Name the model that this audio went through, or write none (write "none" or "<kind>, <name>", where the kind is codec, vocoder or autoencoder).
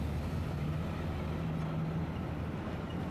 none